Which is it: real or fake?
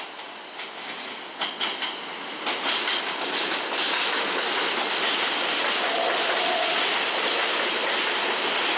real